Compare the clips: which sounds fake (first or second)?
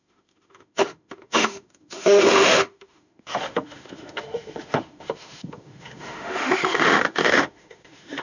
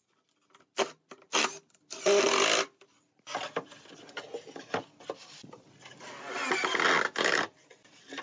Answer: first